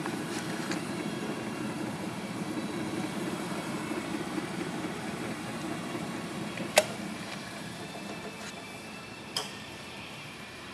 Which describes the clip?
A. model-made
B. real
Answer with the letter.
A